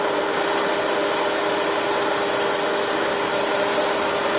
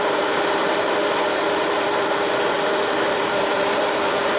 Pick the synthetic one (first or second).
second